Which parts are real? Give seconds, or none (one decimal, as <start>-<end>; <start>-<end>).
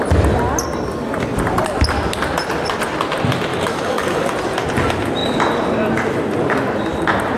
0.0-3.5; 4.3-7.4